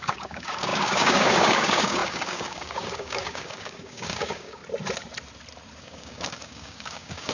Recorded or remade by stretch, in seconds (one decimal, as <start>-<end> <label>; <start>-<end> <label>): 0.0-4.6 remade; 4.6-5.8 recorded; 5.8-7.3 remade